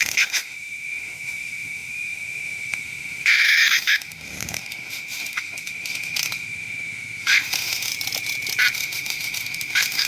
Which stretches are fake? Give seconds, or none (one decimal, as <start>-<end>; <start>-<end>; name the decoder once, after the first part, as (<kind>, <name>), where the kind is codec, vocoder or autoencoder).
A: 0.0-7.9 (autoencoder, DAC-VAE); 8.7-10.1